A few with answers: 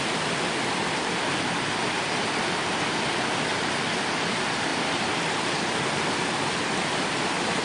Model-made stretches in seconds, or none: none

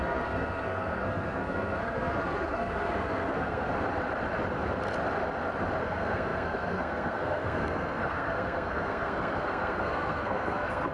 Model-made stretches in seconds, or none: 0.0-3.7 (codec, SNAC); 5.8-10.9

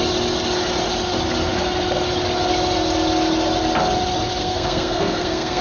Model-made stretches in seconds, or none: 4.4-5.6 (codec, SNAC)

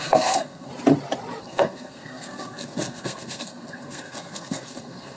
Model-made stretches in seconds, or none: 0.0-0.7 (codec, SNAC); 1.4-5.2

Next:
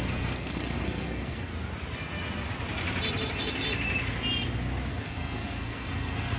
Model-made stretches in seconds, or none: 0.0-1.5 (codec, SNAC); 4.9-6.4

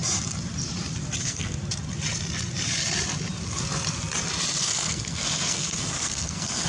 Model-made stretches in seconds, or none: 1.2-1.6 (codec, SNAC); 4.6-6.7